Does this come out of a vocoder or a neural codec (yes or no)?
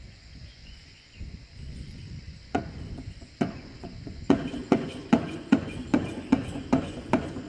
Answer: yes